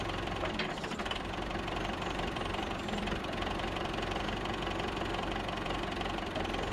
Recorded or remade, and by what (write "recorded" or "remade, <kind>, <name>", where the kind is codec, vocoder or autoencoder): remade, vocoder, BigVGAN v2